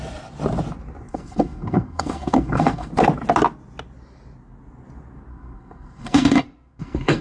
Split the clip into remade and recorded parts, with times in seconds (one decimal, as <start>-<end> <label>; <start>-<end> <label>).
0.0-1.1 recorded; 1.1-2.9 remade; 2.9-5.3 recorded; 5.3-7.2 remade